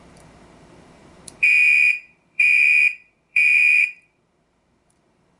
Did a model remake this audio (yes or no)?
yes